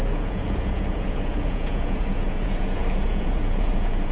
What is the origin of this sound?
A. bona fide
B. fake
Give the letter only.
B